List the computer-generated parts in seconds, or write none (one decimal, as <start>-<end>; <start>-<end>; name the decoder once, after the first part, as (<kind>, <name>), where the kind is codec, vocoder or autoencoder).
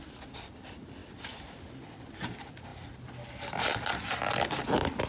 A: none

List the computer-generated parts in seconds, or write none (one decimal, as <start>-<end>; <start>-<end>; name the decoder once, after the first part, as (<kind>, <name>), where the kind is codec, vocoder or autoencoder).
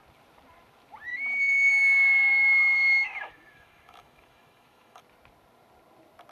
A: 1.1-1.7 (autoencoder, DAC-VAE); 2.3-5.0